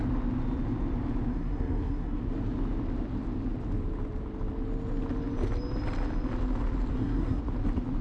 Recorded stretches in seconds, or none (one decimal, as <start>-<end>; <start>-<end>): 0.0-1.3; 2.2-6.9; 7.4-8.0